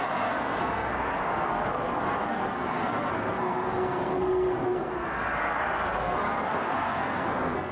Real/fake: fake